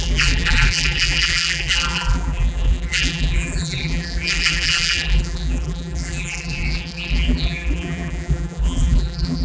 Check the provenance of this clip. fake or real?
fake